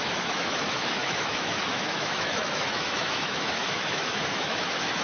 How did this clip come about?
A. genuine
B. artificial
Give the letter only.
B